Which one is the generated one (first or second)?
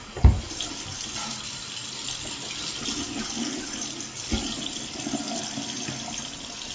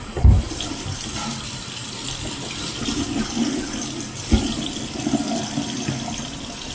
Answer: second